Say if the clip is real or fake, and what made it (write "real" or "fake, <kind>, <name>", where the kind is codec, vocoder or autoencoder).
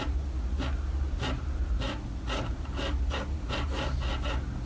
real